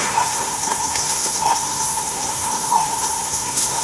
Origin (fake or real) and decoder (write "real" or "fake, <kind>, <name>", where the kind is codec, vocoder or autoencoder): fake, codec, SNAC